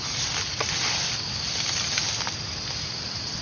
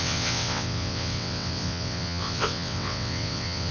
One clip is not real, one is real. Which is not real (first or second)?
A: second